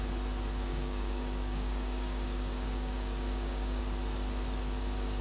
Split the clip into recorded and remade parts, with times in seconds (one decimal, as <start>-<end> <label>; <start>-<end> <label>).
0.0-0.7 recorded; 0.7-3.8 remade; 3.8-5.2 recorded